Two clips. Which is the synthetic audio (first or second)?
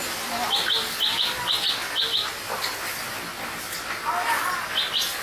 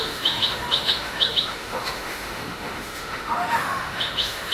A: second